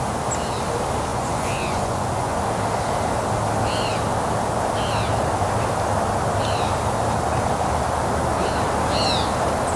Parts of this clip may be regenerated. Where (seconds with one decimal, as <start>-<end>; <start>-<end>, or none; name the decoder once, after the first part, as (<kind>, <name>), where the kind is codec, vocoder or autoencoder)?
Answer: 1.1-2.4 (vocoder, Vocos)